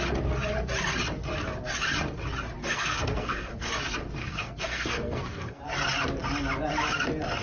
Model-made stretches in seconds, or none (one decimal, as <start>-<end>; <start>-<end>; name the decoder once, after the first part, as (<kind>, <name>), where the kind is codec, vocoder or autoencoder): 2.6-3.7 (codec, SNAC); 4.2-5.6